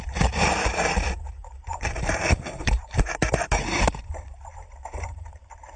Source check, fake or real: fake